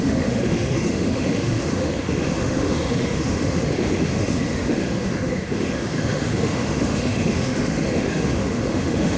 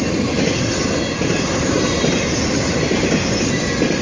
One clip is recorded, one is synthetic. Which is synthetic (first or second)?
first